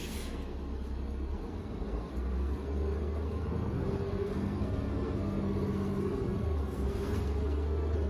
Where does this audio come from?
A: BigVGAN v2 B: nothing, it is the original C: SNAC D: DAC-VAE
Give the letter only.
C